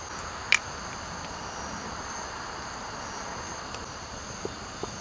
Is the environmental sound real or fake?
real